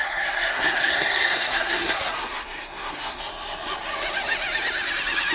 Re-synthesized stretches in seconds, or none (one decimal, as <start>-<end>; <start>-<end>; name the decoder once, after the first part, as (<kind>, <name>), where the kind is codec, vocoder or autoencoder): 0.0-3.2 (codec, SNAC)